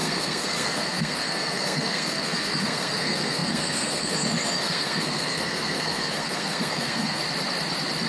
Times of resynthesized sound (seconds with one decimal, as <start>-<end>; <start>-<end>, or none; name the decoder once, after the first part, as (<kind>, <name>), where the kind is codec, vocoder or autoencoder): 0.0-7.2 (codec, SNAC)